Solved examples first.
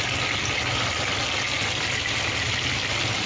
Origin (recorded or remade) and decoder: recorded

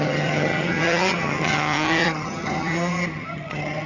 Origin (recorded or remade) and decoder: remade, vocoder, HiFi-GAN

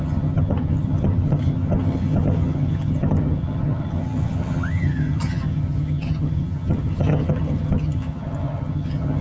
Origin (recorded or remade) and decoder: remade, vocoder, HiFi-GAN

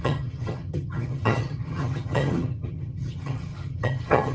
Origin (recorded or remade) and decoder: remade, vocoder, HiFi-GAN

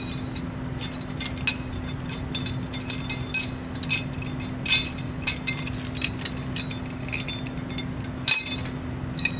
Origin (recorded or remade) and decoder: recorded